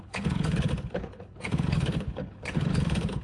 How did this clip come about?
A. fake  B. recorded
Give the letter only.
A